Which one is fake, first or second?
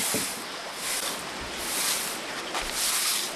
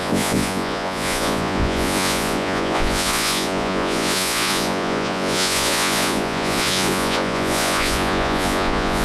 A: second